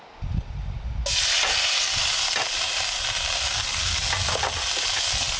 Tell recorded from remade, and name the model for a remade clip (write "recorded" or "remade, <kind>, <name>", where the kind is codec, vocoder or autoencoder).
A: recorded